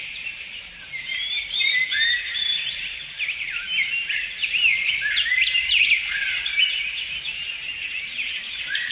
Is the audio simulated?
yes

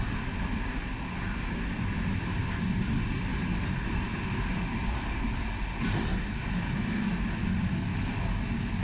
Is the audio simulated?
no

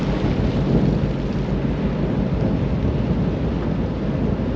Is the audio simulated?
no